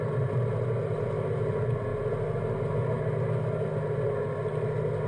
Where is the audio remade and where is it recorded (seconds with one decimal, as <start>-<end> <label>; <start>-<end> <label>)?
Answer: 0.0-5.1 recorded